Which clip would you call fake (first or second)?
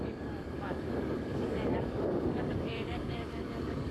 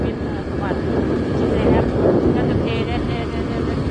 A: first